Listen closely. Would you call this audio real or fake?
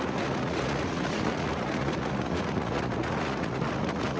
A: fake